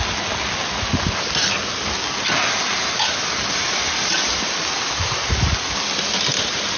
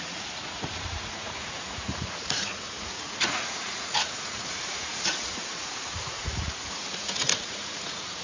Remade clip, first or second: second